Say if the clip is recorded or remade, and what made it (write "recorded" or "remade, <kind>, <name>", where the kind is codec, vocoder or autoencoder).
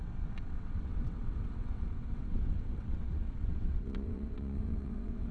remade, vocoder, WaveNeXt